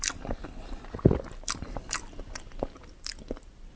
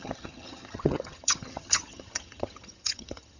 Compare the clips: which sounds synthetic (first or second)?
second